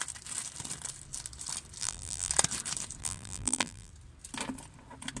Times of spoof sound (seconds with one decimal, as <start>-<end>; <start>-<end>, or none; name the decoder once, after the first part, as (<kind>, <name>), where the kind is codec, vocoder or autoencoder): 1.8-2.3 (vocoder, BigVGAN v2); 3.0-3.9

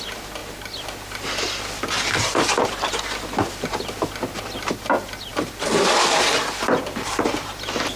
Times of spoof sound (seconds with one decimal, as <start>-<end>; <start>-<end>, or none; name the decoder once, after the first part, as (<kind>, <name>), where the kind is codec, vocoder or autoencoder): none

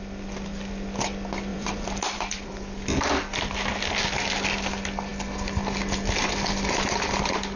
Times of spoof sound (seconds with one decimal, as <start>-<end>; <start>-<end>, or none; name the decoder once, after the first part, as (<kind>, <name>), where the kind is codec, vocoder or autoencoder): 1.5-2.5 (vocoder, BigVGAN v2)

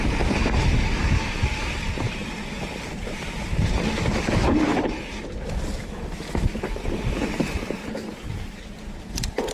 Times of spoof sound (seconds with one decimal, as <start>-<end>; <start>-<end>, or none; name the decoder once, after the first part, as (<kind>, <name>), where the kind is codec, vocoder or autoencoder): 0.0-5.1 (vocoder, BigVGAN v2); 6.7-9.5

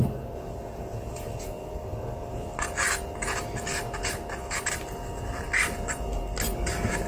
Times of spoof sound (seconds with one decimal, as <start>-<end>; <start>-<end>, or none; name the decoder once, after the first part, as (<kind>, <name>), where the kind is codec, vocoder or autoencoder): none

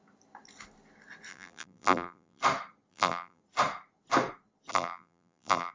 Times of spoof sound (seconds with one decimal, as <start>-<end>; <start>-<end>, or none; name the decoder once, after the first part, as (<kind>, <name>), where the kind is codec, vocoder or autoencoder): 1.3-2.4 (vocoder, BigVGAN v2); 2.9-3.4; 4.7-5.7

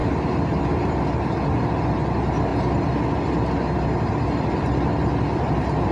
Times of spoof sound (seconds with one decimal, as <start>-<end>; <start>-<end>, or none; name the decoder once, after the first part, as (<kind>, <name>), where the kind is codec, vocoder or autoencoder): 0.0-0.6 (vocoder, BigVGAN v2)